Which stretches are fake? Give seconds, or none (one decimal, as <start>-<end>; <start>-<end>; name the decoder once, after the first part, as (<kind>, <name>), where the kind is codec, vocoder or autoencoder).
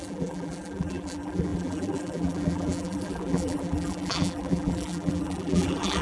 0.0-6.0 (vocoder, BigVGAN v2)